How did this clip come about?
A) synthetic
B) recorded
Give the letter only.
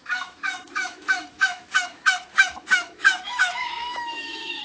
A